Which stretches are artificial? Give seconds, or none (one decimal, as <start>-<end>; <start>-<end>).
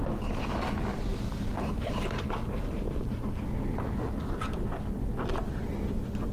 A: 1.1-2.1